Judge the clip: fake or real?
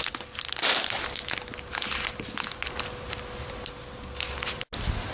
real